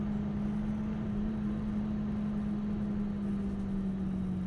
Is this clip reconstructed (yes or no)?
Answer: no